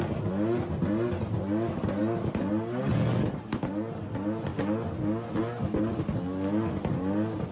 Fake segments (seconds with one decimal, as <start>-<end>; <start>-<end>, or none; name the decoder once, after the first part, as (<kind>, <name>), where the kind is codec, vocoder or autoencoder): none